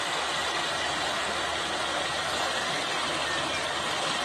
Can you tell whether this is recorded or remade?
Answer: recorded